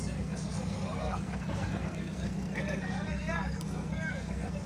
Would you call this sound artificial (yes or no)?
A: yes